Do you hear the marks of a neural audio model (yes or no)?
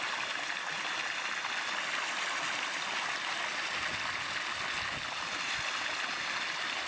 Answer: no